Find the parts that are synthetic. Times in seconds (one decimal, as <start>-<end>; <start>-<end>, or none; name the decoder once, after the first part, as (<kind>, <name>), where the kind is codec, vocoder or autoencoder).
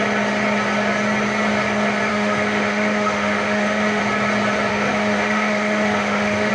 2.1-4.0 (autoencoder, DAC-VAE); 4.7-6.5